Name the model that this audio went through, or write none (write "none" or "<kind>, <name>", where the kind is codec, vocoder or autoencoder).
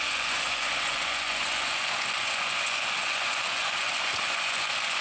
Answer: vocoder, Vocos